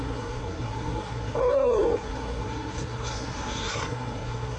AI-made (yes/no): yes